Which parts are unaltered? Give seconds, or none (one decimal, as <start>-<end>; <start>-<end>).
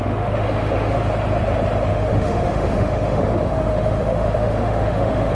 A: 1.0-1.9